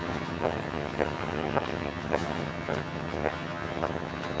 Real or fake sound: fake